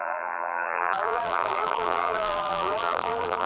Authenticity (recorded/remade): remade